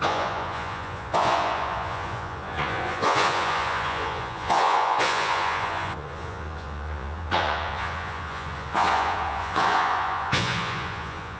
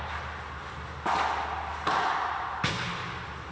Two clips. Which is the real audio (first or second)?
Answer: second